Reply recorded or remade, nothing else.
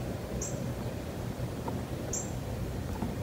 remade